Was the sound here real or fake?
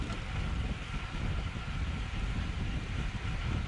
real